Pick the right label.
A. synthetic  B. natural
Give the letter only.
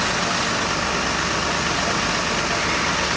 B